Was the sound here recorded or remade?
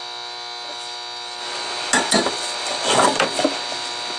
recorded